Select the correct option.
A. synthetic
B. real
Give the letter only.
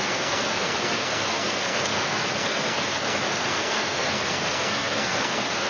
A